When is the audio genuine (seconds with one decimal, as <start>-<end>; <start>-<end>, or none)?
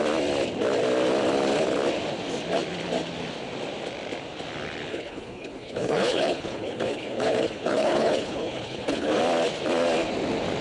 0.0-4.9; 9.2-10.6